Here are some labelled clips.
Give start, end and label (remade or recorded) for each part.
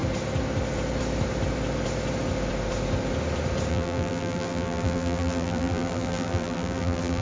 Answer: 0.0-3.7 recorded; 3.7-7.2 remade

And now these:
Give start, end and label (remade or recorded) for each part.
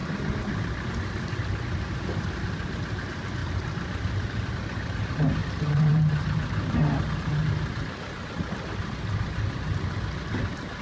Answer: 0.0-5.4 recorded; 5.4-8.5 remade; 8.5-10.8 recorded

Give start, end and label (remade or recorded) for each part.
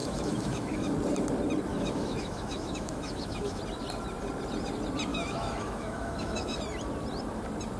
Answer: 0.0-0.9 remade; 0.9-1.7 recorded; 1.7-3.6 remade; 3.6-5.1 recorded; 5.1-6.6 remade; 6.6-7.8 recorded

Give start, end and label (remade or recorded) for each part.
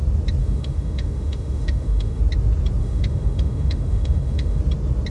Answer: 0.0-0.4 recorded; 0.4-2.2 remade; 2.2-2.8 recorded; 2.8-4.6 remade; 4.6-5.1 recorded